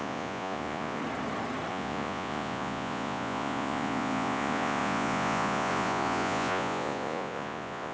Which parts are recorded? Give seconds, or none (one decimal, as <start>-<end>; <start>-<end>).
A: 1.0-1.7